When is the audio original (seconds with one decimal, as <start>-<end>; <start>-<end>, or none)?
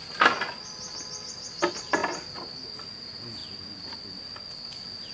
0.0-5.1